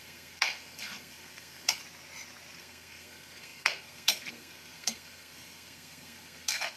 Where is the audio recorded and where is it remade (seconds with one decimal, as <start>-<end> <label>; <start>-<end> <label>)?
0.0-1.8 remade; 1.8-2.6 recorded; 2.6-6.8 remade

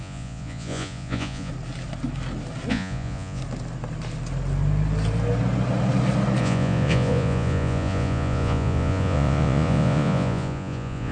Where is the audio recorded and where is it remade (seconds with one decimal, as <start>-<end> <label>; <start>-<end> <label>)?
0.0-1.5 remade; 1.5-2.7 recorded; 2.7-3.4 remade; 3.4-6.4 recorded; 6.4-11.1 remade

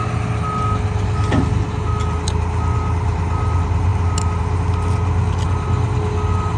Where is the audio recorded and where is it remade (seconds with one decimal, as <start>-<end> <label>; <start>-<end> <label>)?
0.0-6.6 recorded

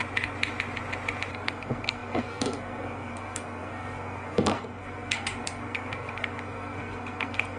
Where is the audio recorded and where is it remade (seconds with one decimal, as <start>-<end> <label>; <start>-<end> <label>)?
0.0-1.3 recorded; 1.3-7.6 remade

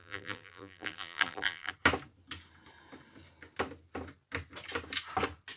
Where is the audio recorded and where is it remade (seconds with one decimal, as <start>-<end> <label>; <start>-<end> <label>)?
0.0-1.7 remade; 1.7-5.6 recorded

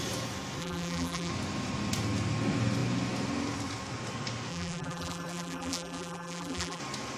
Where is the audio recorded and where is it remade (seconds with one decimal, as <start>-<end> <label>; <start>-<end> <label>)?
0.0-0.6 recorded; 0.6-1.3 remade; 1.3-4.5 recorded; 4.5-6.8 remade; 6.8-7.2 recorded

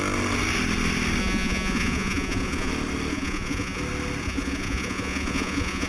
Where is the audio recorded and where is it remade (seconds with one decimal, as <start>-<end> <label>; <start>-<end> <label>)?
0.0-1.2 recorded; 1.2-2.7 remade; 2.7-3.1 recorded; 3.1-3.8 remade; 3.8-4.2 recorded; 4.2-5.9 remade